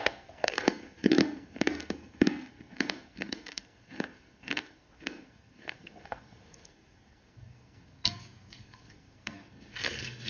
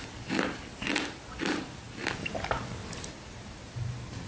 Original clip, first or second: second